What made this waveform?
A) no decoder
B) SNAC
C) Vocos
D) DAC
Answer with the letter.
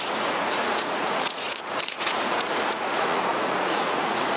C